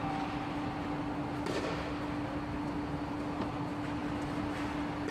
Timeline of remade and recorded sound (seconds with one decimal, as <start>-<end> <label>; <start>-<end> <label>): 0.0-5.1 recorded